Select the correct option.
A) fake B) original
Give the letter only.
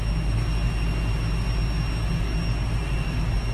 B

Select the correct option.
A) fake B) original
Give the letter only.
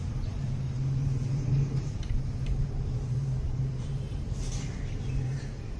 A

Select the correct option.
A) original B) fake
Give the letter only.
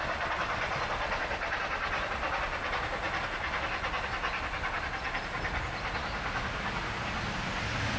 A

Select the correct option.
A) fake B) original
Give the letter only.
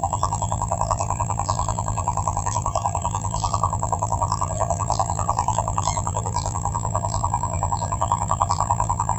A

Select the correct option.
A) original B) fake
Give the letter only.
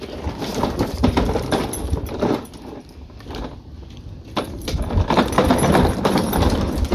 B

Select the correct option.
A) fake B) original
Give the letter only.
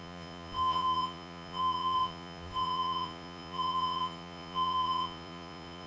A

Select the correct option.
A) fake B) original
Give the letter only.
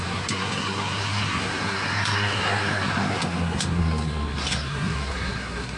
A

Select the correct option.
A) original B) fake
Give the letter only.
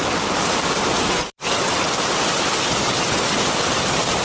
B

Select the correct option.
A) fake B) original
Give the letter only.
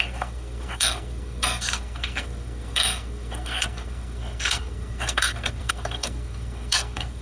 A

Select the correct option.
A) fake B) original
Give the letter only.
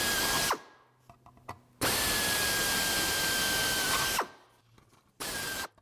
B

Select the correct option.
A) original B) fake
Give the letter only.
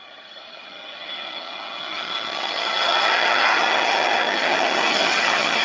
B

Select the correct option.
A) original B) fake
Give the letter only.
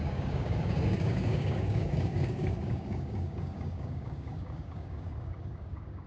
B